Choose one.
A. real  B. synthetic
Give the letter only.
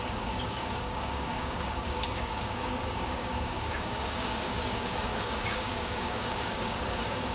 B